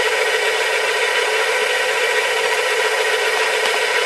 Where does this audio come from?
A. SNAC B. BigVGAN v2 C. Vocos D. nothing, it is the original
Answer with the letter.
D